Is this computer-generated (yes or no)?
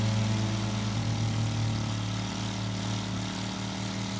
no